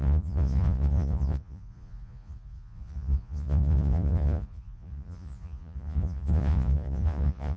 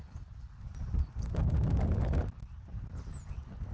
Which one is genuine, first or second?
second